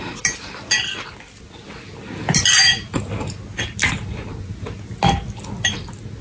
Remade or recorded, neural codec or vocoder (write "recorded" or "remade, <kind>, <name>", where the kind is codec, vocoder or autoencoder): recorded